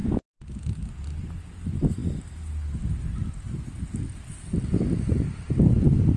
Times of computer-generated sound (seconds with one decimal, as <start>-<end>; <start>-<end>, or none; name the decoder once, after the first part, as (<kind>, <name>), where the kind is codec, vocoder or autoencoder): none